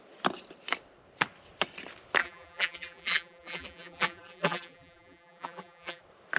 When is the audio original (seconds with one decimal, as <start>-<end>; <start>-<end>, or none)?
0.0-2.2; 6.0-6.4